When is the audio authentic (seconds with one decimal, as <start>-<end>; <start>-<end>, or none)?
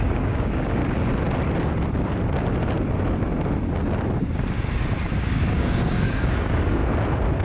0.8-5.2; 6.8-7.4